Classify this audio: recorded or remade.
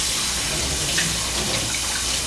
recorded